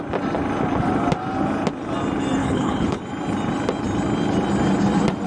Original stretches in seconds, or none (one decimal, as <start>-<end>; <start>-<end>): 0.0-2.4; 3.0-5.3